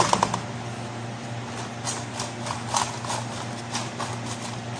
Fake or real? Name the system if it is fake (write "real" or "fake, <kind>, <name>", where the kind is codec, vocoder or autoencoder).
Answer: real